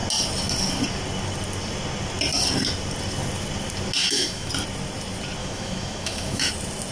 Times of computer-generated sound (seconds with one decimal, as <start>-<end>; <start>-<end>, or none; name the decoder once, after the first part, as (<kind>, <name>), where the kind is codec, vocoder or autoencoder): 4.0-4.5 (autoencoder, DAC-VAE); 5.4-6.5